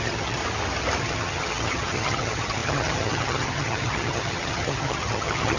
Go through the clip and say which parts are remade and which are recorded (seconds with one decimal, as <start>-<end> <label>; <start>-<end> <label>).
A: 0.0-0.4 remade; 0.4-1.0 recorded; 1.0-5.6 remade